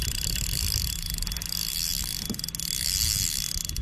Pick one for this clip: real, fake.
real